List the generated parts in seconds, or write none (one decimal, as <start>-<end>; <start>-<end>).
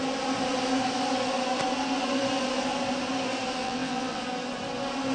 3.6-4.2